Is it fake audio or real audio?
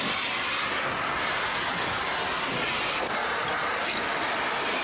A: real